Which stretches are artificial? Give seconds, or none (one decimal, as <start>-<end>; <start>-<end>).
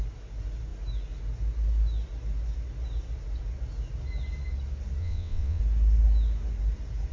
5.0-5.6